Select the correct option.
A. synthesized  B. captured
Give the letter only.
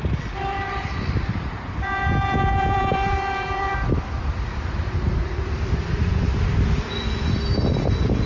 A